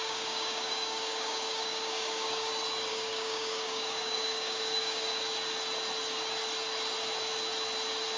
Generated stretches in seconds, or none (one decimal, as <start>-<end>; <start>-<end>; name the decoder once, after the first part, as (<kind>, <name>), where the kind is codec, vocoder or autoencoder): 0.0-2.5 (codec, DAC); 2.9-5.2